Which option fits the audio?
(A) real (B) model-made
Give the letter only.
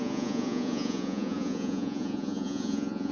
B